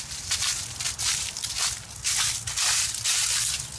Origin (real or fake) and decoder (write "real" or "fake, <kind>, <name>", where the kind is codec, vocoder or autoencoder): real